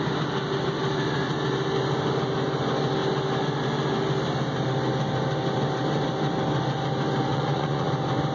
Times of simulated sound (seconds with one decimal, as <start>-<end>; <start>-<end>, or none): 7.3-7.9